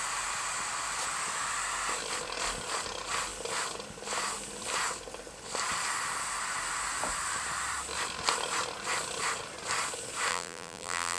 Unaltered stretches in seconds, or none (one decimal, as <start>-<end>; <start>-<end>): 0.0-10.3